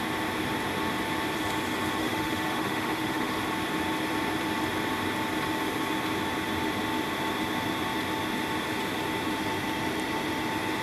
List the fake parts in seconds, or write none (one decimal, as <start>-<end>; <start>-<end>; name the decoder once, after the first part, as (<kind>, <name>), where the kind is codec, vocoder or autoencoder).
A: 2.0-3.3 (autoencoder, DAC-VAE)